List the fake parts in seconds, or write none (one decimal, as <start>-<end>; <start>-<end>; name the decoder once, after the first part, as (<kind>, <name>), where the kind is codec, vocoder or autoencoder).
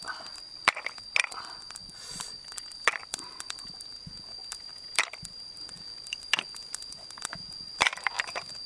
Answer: none